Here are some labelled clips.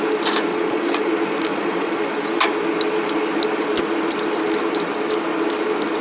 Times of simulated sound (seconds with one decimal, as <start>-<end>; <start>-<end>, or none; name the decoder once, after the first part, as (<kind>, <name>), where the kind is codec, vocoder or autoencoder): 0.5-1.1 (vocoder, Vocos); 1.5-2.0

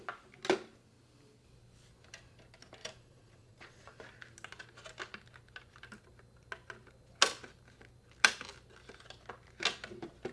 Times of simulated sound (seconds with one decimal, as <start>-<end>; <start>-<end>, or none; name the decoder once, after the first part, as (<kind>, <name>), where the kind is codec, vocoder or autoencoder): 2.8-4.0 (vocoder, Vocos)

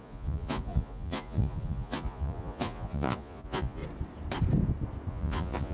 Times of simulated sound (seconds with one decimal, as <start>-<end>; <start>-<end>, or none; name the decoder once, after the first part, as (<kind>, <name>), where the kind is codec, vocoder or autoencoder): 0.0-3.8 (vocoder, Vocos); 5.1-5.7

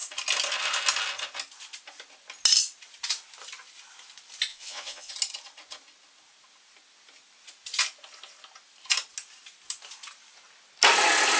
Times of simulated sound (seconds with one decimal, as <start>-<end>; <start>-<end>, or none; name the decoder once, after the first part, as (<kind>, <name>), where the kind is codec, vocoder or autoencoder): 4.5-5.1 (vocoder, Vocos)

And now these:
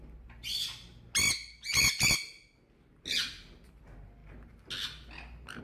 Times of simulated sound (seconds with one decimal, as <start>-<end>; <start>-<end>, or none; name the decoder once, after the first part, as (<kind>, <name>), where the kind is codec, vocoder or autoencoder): none

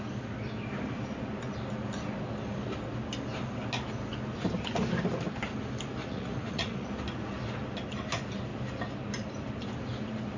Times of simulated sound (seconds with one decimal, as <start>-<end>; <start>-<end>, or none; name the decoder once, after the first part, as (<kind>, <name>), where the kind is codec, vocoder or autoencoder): 6.0-6.9 (vocoder, Vocos)